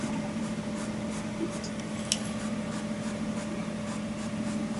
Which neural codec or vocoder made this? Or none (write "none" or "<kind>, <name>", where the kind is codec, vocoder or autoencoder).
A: none